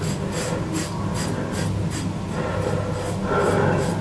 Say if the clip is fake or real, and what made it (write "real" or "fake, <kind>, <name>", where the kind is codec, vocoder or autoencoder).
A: real